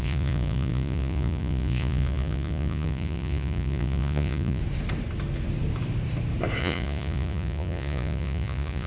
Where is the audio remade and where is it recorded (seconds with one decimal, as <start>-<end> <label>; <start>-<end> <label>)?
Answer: 0.0-4.6 remade; 4.6-6.6 recorded; 6.6-8.9 remade